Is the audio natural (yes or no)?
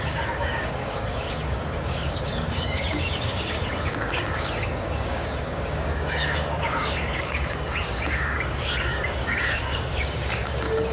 no